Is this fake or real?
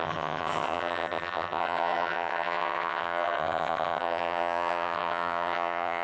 fake